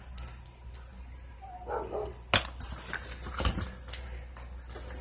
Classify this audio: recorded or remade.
recorded